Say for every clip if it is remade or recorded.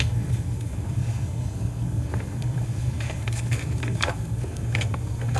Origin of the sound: remade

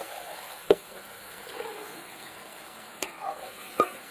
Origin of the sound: remade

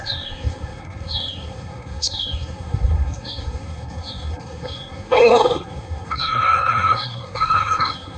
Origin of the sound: remade